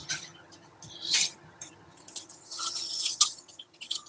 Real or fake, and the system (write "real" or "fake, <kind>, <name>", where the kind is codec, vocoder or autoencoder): fake, vocoder, HiFi-GAN